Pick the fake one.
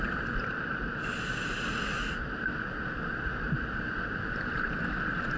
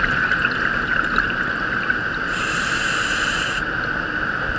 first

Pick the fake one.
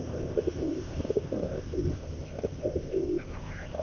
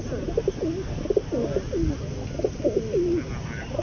first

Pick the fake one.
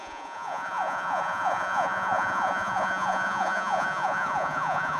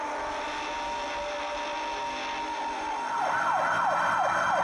first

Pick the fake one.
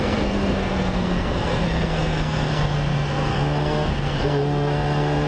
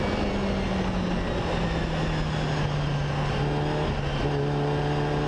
first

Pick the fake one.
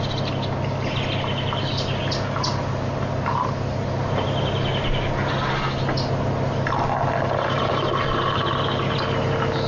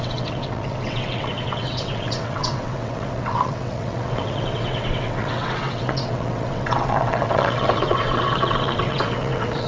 second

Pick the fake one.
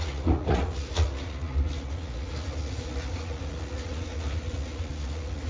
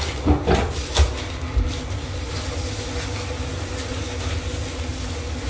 first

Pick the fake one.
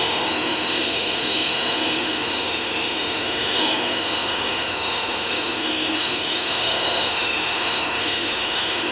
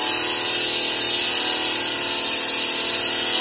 first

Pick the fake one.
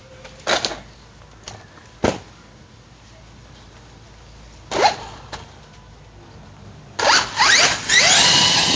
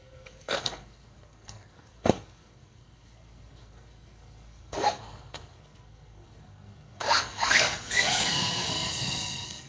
second